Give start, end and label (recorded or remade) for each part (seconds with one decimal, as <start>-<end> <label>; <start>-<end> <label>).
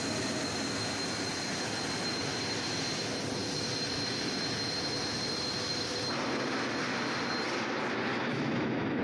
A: 0.0-8.1 recorded; 8.1-9.0 remade